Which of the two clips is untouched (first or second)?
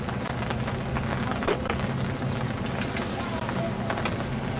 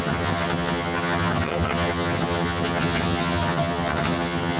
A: first